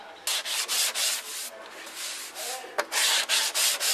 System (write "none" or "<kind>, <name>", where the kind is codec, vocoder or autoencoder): none